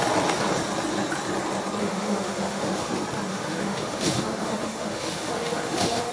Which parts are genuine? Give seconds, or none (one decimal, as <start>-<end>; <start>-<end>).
0.0-1.8; 2.9-3.3